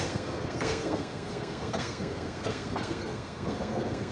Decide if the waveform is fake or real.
fake